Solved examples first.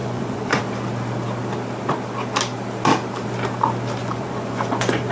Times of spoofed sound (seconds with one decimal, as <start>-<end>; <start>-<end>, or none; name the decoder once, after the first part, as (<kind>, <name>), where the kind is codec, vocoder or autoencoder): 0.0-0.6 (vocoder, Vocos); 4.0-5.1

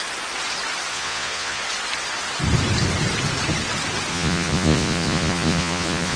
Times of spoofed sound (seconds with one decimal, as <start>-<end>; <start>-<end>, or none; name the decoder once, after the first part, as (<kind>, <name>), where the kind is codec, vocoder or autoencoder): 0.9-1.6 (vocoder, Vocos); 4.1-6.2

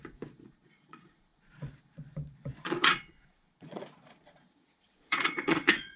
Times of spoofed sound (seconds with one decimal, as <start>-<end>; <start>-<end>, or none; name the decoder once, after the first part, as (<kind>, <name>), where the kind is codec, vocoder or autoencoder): 0.0-6.0 (vocoder, Vocos)